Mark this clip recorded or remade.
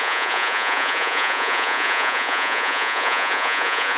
remade